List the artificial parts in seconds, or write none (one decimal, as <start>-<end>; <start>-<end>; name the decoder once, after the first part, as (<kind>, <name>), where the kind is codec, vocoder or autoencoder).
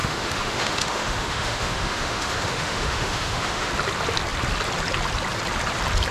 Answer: 0.0-3.7 (autoencoder, DAC-VAE)